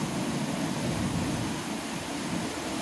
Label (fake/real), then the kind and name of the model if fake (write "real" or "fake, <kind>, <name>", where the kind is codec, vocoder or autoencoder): real